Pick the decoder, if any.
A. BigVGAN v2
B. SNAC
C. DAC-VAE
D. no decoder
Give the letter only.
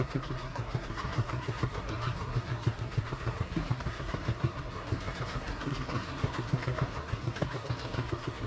B